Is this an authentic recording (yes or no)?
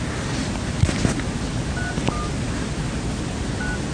yes